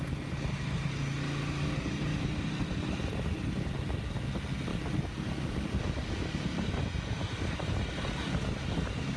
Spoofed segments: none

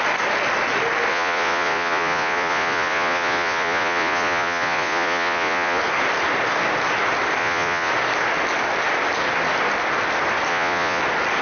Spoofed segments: 1.1-5.8 (vocoder, Vocos); 7.4-7.9; 10.5-11.0

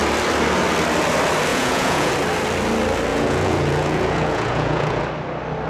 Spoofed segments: 1.5-2.1 (vocoder, Vocos); 3.1-5.0

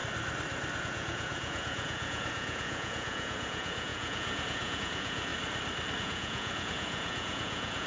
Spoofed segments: 0.8-5.3 (vocoder, Vocos); 6.0-7.9

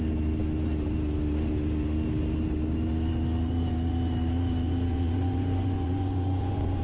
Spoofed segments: 4.9-6.8 (vocoder, Vocos)